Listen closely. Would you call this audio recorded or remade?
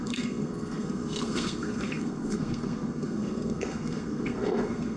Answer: remade